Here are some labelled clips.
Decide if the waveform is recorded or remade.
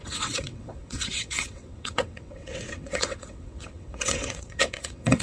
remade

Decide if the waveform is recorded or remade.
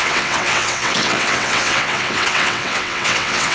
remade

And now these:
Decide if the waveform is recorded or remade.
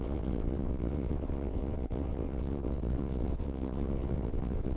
remade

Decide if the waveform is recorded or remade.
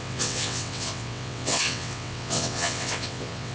remade